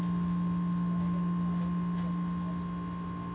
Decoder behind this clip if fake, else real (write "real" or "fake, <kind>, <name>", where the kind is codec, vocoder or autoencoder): real